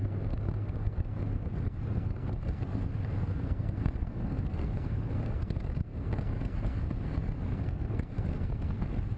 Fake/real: fake